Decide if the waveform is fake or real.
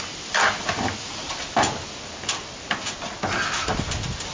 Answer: real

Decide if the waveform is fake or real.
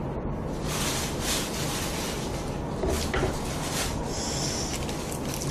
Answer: real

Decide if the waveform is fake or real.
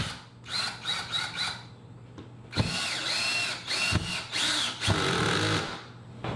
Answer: real